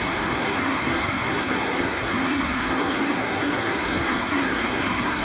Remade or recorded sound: remade